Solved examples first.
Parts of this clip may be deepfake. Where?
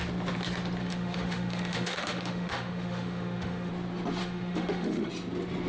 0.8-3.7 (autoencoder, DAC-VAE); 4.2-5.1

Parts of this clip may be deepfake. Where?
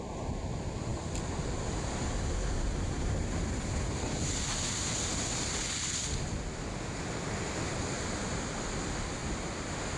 none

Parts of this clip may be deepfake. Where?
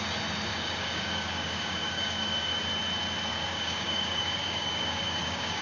0.5-2.6 (codec, DAC); 3.3-5.6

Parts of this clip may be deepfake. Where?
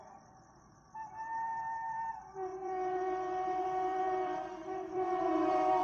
0.0-5.8 (vocoder, BigVGAN v2)